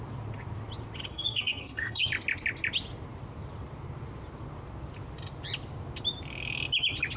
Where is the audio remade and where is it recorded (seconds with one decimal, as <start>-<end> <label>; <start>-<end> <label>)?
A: 0.0-1.1 recorded; 1.1-2.0 remade; 2.0-7.2 recorded